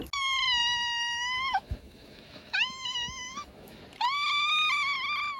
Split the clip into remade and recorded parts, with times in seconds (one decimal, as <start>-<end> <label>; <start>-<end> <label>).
0.0-0.6 recorded; 0.6-3.8 remade; 3.8-5.4 recorded